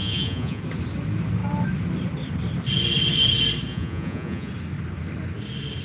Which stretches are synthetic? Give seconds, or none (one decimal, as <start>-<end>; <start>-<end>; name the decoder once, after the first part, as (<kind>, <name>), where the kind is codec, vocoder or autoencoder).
0.0-0.6 (vocoder, Vocos); 3.7-4.5